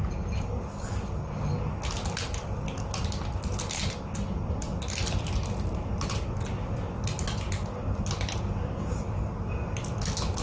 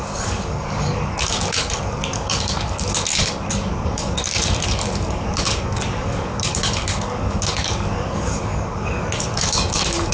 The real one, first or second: first